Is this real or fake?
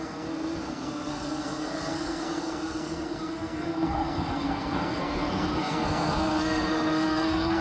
fake